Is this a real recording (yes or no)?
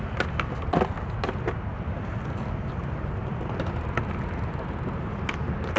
yes